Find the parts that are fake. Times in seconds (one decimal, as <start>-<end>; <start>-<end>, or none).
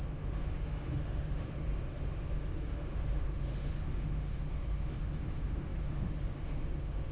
0.0-7.1